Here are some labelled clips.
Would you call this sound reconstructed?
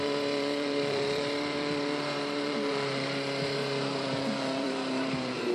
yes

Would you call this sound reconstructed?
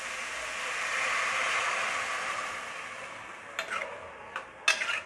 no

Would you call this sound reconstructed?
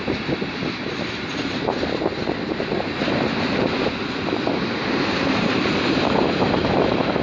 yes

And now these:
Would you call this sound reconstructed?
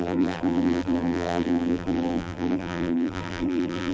yes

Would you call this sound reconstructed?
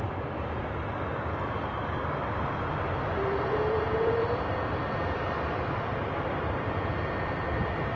yes